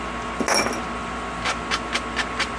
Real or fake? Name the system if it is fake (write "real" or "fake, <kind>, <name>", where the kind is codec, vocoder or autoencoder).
real